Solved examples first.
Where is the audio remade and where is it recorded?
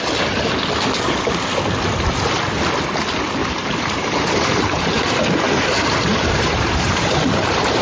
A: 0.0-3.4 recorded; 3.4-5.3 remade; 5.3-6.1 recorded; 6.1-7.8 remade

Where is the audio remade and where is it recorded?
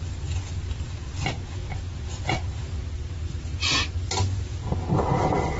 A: 0.0-5.6 recorded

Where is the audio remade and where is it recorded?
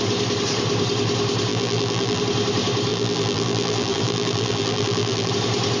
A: 0.0-1.5 recorded; 1.5-2.2 remade; 2.2-2.9 recorded; 2.9-5.3 remade; 5.3-5.8 recorded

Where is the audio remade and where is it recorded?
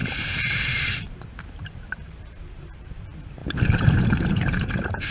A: 0.0-5.1 remade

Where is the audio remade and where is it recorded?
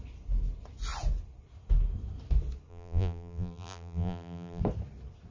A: 0.0-2.7 recorded; 2.7-4.6 remade; 4.6-5.3 recorded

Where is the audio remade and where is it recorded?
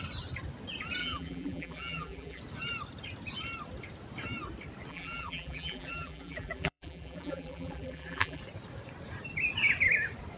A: 0.0-1.0 recorded; 1.0-2.4 remade; 2.4-4.9 recorded; 4.9-8.4 remade; 8.4-10.4 recorded